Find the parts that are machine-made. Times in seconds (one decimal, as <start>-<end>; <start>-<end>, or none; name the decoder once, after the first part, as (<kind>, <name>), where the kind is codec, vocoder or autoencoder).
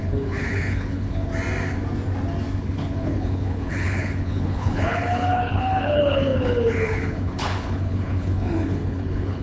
0.0-1.3 (codec, HILCodec); 2.6-9.4